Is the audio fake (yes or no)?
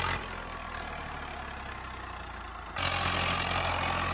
no